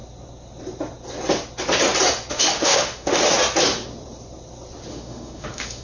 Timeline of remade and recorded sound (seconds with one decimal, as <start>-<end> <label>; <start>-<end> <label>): 0.0-2.3 recorded; 2.3-3.2 remade; 3.2-4.9 recorded; 4.9-5.8 remade